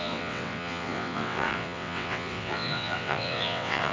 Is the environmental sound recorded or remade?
remade